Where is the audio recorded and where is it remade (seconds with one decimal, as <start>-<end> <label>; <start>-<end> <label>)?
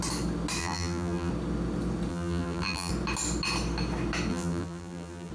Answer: 0.0-0.6 recorded; 0.6-1.3 remade; 1.3-2.1 recorded; 2.1-2.9 remade; 2.9-4.3 recorded; 4.3-5.3 remade